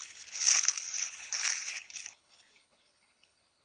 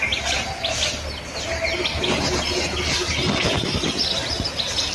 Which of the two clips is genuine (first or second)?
second